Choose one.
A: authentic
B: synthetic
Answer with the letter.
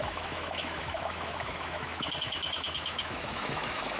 B